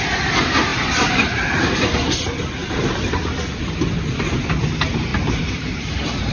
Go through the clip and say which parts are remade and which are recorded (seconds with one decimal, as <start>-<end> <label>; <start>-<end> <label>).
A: 0.0-0.7 recorded; 0.7-1.9 remade; 1.9-2.6 recorded; 2.6-3.2 remade; 3.2-5.1 recorded; 5.1-6.3 remade